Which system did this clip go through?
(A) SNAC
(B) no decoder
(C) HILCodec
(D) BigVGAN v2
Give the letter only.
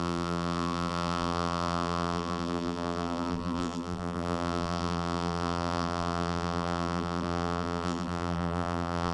D